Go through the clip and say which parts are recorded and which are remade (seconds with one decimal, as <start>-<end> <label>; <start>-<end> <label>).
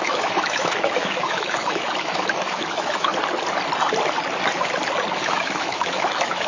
0.0-3.1 remade; 3.1-5.2 recorded; 5.2-6.5 remade